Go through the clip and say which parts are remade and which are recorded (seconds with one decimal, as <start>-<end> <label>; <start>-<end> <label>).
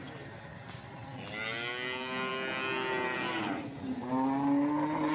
0.0-5.1 recorded